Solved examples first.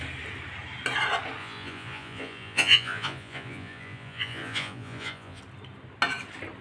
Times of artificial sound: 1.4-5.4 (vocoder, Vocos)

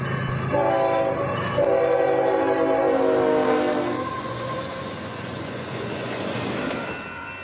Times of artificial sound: 4.2-6.5 (vocoder, Vocos)

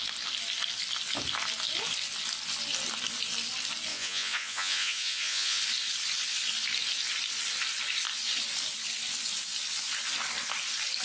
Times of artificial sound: 3.9-5.6 (vocoder, Vocos)

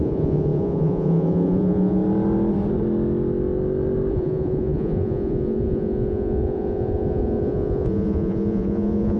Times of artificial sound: 0.0-2.0 (vocoder, Vocos); 4.1-9.2

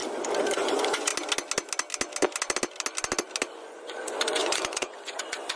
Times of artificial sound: 0.6-1.1 (vocoder, Vocos); 3.5-5.6